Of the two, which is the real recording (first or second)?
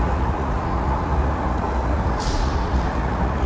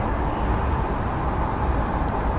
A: second